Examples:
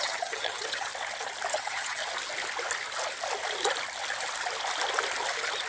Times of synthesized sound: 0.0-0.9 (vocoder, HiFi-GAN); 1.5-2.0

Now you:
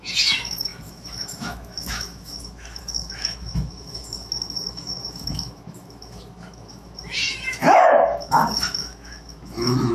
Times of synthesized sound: 0.0-9.9 (autoencoder, DAC-VAE)

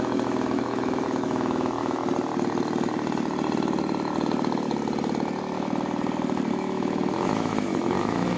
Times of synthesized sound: 0.0-2.0 (autoencoder, DAC-VAE); 6.5-8.4

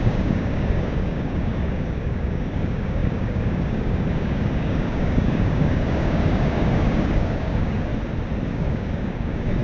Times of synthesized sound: 0.0-7.9 (codec, DAC); 8.5-9.6

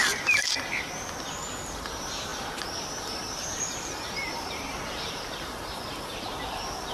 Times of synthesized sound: 1.5-6.9 (vocoder, BigVGAN v2)

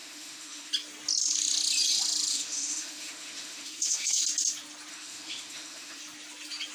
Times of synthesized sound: 0.0-0.7 (autoencoder, DAC-VAE); 2.3-4.2; 4.9-6.0

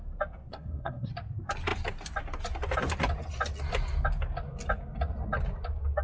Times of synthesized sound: 0.5-1.1 (codec, SNAC)

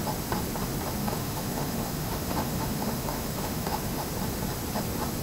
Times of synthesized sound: 1.0-4.1 (autoencoder, DAC-VAE)